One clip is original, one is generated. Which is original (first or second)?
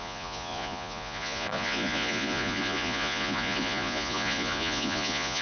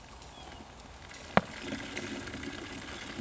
second